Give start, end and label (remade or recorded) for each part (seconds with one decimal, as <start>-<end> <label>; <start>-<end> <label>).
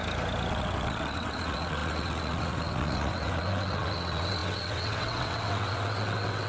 0.0-0.5 recorded; 0.5-6.5 remade